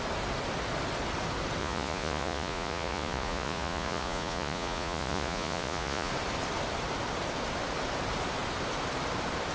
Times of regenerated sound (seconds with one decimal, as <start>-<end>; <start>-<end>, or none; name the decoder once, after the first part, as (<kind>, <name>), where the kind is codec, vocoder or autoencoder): 1.6-6.1 (vocoder, Vocos)